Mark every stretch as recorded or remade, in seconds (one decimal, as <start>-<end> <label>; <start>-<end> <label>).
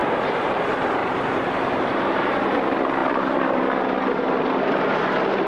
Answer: 0.0-0.6 remade; 0.6-1.0 recorded; 1.0-2.3 remade; 2.3-3.0 recorded; 3.0-3.6 remade; 3.6-5.5 recorded